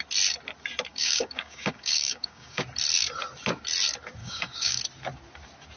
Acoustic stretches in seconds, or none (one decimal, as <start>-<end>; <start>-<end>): 0.0-0.9; 2.6-4.2; 4.8-5.8